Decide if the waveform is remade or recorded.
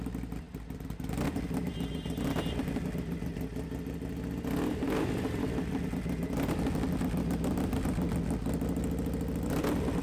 recorded